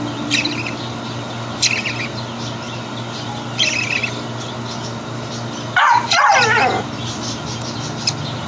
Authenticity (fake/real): real